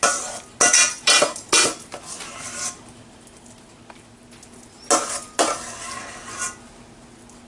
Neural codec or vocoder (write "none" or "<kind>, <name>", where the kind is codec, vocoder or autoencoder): none